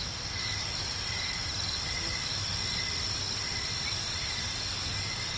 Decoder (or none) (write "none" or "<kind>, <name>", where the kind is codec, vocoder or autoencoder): none